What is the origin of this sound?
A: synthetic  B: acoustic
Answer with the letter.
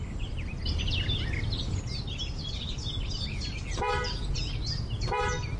B